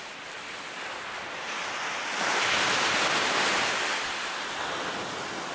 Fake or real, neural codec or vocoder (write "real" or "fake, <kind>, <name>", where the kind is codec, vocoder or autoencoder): real